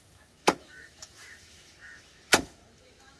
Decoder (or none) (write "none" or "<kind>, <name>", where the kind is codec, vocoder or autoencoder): autoencoder, DAC-VAE